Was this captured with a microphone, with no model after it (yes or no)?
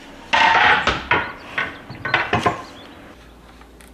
yes